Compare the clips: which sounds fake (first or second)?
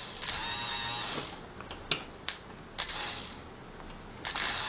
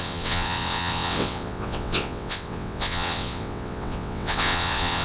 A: second